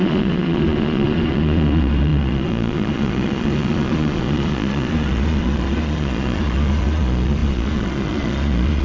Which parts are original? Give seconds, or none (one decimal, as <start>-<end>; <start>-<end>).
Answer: none

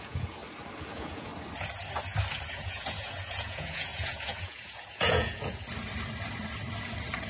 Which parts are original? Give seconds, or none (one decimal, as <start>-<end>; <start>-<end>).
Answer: 0.4-0.9; 1.3-2.3; 5.6-7.3

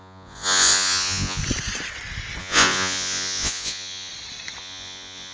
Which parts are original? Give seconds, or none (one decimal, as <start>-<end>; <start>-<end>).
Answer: 1.4-2.4; 4.1-4.6